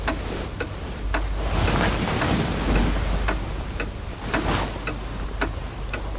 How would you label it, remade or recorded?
recorded